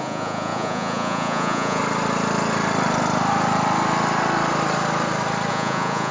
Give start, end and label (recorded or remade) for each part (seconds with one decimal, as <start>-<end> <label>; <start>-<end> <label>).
0.0-1.8 remade; 1.8-5.5 recorded; 5.5-6.1 remade